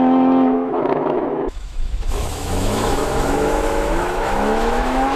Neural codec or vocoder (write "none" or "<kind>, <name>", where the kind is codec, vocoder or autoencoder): autoencoder, DAC-VAE